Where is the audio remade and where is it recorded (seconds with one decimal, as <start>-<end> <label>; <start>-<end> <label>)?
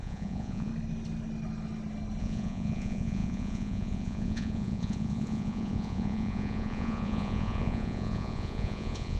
0.0-0.7 remade; 0.7-2.2 recorded; 2.2-9.2 remade